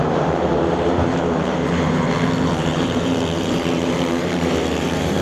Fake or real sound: fake